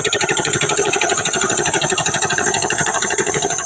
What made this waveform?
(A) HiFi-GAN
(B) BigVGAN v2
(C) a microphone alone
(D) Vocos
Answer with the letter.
A